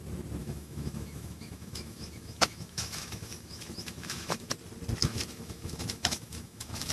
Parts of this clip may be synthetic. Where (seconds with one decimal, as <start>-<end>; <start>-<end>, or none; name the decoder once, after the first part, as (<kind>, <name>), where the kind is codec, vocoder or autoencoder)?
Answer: 0.4-4.5 (autoencoder, DAC-VAE); 5.0-6.9